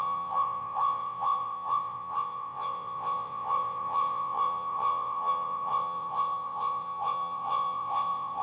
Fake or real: fake